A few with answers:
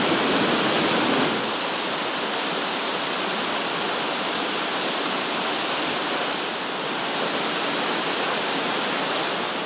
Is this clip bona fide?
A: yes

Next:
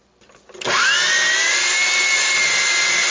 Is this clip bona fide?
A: yes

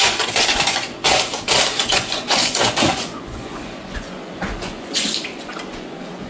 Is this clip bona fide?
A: no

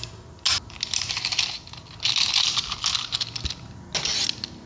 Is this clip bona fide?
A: yes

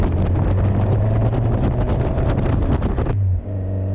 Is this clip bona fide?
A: yes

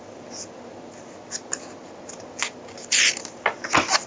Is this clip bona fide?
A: yes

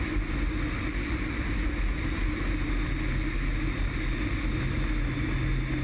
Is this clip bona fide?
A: yes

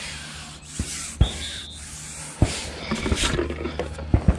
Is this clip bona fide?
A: yes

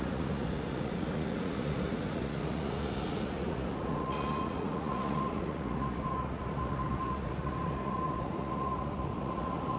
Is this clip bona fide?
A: no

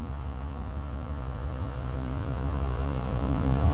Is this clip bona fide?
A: no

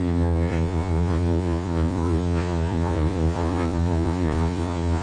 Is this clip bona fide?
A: no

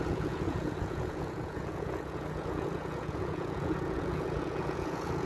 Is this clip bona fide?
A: no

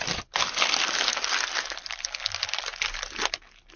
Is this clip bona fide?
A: yes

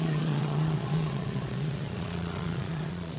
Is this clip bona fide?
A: no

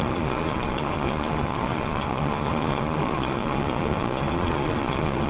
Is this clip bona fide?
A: no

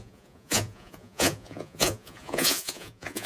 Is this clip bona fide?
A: no